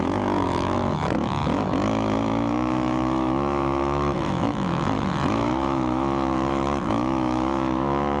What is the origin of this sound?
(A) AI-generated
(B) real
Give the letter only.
A